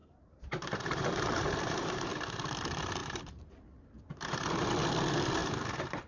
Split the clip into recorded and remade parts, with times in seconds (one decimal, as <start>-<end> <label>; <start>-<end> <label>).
0.0-2.1 remade; 2.1-3.0 recorded; 3.0-3.5 remade; 3.5-5.4 recorded; 5.4-6.1 remade

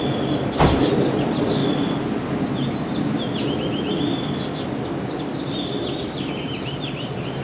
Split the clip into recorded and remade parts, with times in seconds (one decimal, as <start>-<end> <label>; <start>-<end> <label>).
0.0-1.6 remade; 1.6-6.0 recorded; 6.0-7.4 remade

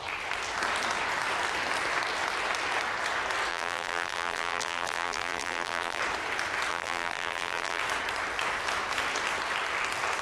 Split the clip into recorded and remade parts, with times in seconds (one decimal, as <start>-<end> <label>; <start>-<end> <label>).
0.0-3.5 recorded; 3.5-6.0 remade; 6.0-6.7 recorded; 6.7-7.8 remade; 7.8-10.2 recorded

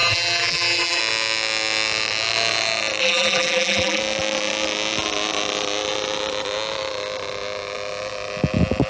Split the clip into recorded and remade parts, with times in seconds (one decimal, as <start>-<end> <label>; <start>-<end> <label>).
0.0-1.0 remade; 1.0-3.0 recorded; 3.0-4.0 remade; 4.0-8.9 recorded

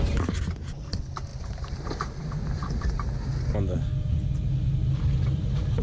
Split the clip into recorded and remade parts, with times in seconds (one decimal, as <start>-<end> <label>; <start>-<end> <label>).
0.0-1.3 recorded; 1.3-2.8 remade; 2.8-5.8 recorded

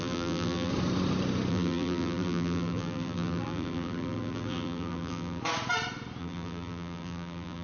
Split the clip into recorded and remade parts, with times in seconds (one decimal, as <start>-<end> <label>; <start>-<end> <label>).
0.0-0.7 remade; 0.7-1.5 recorded; 1.5-5.4 remade; 5.4-6.2 recorded; 6.2-7.6 remade

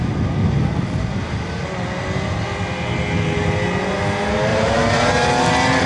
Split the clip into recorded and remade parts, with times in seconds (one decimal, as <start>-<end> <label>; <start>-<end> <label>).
0.0-4.5 recorded; 4.5-5.1 remade; 5.1-5.9 recorded

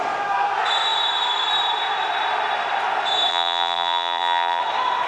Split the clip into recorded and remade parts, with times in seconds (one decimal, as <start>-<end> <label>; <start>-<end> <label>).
0.0-3.3 recorded; 3.3-4.6 remade; 4.6-5.1 recorded